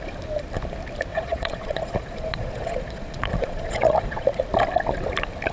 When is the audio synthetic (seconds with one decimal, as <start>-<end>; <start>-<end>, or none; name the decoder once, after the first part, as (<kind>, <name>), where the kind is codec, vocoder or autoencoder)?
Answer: 1.1-4.4 (vocoder, Vocos)